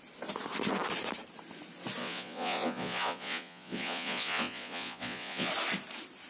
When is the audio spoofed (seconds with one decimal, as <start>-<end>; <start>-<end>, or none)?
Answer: 2.0-5.5